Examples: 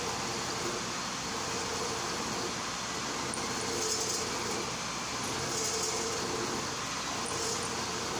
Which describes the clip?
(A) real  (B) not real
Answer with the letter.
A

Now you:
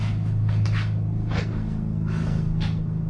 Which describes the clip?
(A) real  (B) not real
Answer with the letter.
B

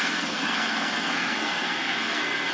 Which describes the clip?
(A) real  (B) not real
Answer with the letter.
B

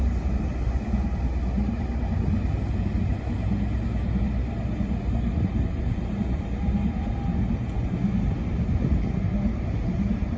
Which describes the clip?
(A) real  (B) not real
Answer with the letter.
A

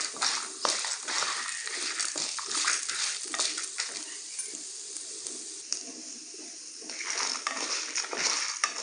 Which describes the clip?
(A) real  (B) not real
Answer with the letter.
A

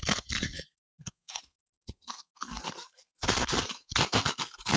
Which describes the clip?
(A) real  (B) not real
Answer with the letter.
B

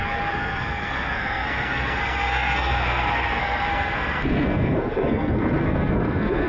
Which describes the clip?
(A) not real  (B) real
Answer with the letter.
A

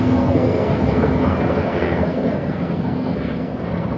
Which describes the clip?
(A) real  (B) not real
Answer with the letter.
B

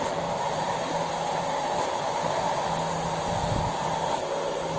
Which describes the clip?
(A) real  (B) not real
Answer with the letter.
A